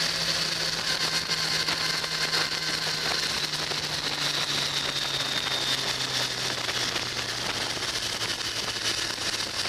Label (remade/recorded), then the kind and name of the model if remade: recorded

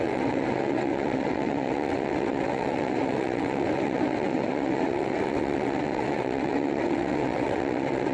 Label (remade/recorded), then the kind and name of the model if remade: remade, vocoder, WaveNeXt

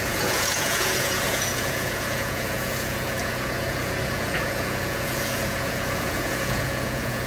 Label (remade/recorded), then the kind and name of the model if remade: remade, vocoder, Vocos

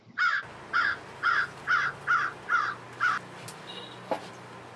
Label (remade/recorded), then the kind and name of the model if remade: recorded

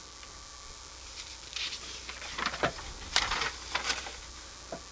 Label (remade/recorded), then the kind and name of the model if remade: remade, vocoder, BigVGAN v2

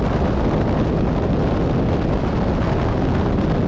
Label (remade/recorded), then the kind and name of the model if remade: recorded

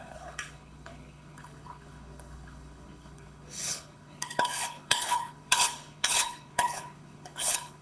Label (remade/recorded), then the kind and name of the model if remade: remade, codec, HILCodec